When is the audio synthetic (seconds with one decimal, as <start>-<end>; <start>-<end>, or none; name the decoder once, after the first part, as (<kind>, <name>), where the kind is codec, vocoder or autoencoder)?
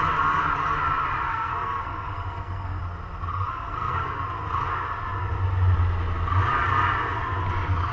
1.3-2.8 (codec, SNAC); 3.3-4.2